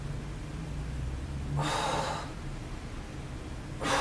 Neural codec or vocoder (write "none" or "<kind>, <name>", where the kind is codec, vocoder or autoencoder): none